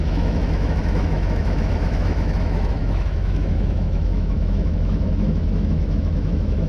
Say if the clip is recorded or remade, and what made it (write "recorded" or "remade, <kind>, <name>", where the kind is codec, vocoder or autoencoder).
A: remade, autoencoder, DAC-VAE